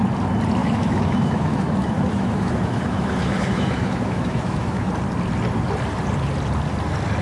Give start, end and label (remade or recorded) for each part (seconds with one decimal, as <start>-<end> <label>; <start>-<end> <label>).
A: 0.0-0.6 recorded; 0.6-4.9 remade; 4.9-7.2 recorded